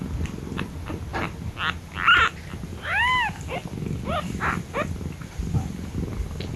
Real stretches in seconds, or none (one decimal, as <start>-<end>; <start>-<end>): 0.0-6.6